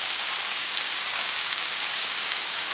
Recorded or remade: remade